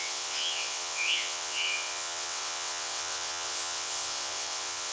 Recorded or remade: remade